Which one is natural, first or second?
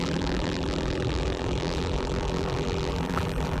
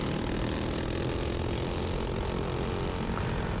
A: second